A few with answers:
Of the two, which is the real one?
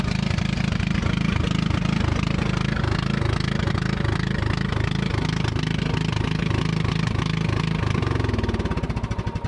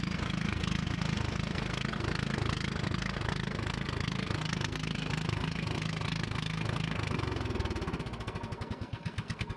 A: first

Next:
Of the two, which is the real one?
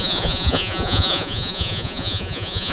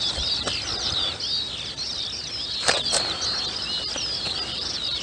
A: second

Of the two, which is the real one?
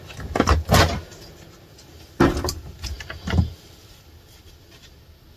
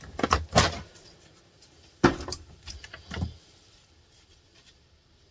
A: first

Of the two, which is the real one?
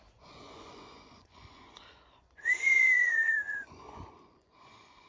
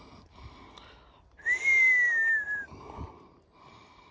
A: second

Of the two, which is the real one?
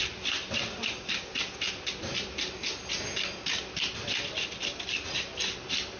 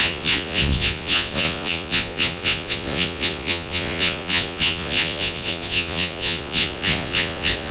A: first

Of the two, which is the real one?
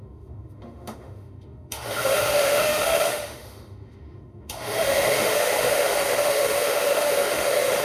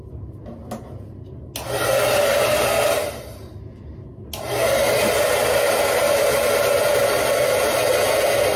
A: second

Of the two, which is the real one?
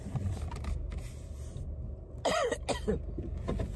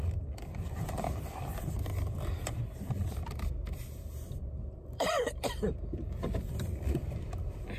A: first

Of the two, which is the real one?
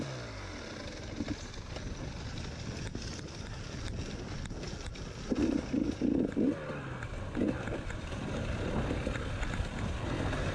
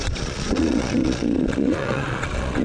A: first